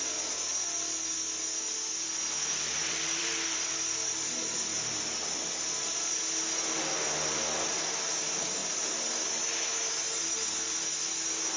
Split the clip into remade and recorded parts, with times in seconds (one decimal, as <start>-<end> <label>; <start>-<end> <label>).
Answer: 0.0-2.8 recorded; 2.8-6.2 remade; 6.2-11.6 recorded